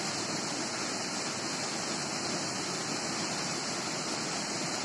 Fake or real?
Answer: real